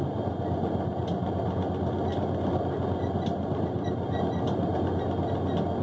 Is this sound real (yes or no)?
yes